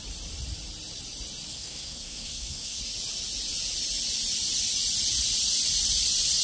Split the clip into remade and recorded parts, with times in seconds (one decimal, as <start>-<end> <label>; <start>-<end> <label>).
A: 0.0-1.5 recorded; 1.5-2.8 remade; 2.8-6.4 recorded